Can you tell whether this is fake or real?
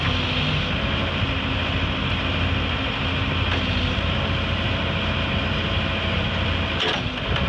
real